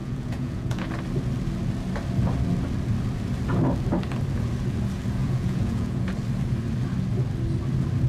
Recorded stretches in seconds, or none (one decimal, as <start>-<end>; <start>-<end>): 0.9-5.2; 6.1-8.1